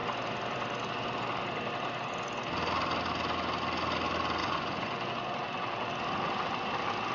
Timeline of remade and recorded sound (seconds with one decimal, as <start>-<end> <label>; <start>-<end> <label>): 0.0-4.4 recorded; 4.4-5.9 remade; 5.9-7.1 recorded